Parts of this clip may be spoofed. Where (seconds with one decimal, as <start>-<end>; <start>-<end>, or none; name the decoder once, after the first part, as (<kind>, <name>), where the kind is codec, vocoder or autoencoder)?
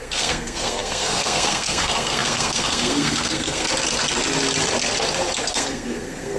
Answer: 0.0-3.7 (codec, SNAC); 5.4-6.4